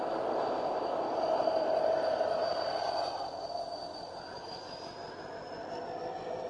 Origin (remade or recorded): recorded